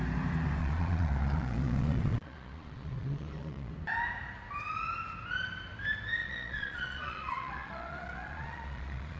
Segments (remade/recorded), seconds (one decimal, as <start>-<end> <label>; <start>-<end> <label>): 0.0-0.6 recorded; 0.6-3.7 remade; 3.7-6.2 recorded; 6.2-9.2 remade